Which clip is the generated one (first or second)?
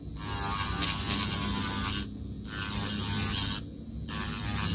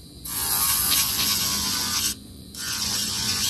second